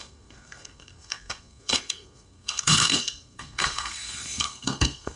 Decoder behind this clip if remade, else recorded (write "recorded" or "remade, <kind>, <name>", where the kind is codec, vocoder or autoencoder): remade, codec, SNAC